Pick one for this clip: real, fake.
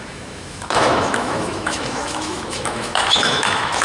fake